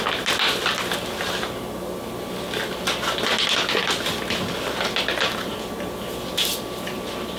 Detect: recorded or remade recorded